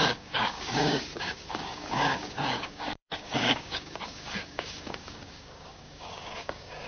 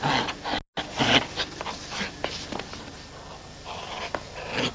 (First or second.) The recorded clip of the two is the second